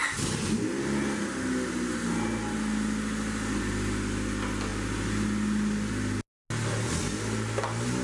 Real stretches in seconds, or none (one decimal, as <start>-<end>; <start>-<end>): 0.0-8.0